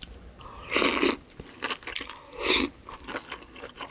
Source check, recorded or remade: recorded